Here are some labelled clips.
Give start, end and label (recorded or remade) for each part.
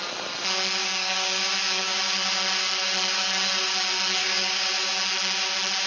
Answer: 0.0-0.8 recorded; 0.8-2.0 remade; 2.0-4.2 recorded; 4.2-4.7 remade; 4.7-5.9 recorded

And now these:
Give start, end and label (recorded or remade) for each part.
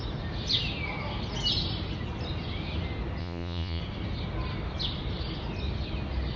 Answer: 0.0-3.2 recorded; 3.2-3.8 remade; 3.8-6.4 recorded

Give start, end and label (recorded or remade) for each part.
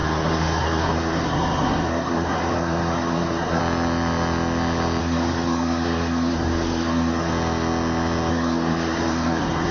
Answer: 0.0-3.6 remade; 3.6-5.0 recorded; 5.0-7.3 remade; 7.3-8.3 recorded; 8.3-9.7 remade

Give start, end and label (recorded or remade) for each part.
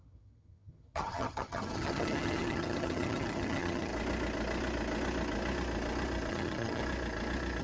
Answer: 0.0-3.9 remade; 3.9-6.3 recorded; 6.3-6.8 remade; 6.8-7.6 recorded